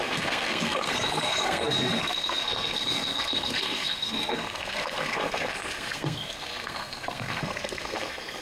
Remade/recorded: remade